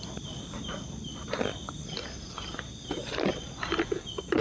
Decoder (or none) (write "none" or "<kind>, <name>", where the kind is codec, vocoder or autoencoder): none